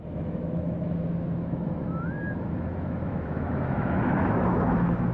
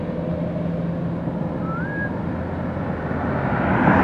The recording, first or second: second